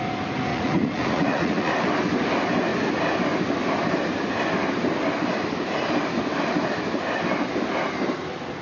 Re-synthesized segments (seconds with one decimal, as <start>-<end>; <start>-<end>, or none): 0.5-1.7